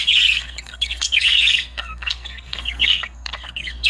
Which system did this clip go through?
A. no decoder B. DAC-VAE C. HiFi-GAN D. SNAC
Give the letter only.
D